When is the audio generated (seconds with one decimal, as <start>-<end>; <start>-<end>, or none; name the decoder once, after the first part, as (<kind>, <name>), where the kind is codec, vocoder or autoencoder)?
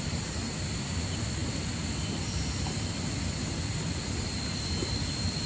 none